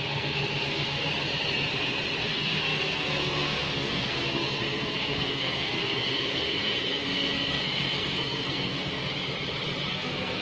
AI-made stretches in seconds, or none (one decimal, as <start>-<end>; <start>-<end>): 0.0-1.1; 2.2-9.0; 9.9-10.4